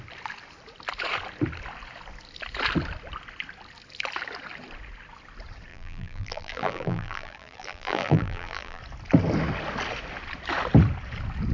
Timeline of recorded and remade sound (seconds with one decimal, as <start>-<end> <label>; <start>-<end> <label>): 0.0-5.7 recorded; 5.7-8.8 remade; 8.8-11.5 recorded